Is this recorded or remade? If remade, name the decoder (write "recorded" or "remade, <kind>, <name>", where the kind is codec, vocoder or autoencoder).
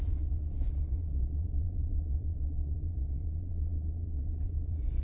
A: remade, vocoder, Vocos